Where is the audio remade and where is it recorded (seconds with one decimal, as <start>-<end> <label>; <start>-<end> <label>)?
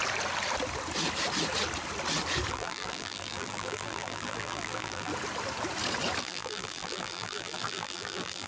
0.0-2.5 recorded; 2.5-5.1 remade; 5.1-6.2 recorded; 6.2-8.5 remade